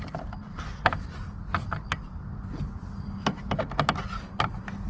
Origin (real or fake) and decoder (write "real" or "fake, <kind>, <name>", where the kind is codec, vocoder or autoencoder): real